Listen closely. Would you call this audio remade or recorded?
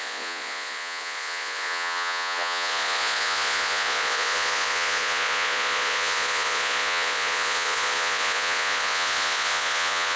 remade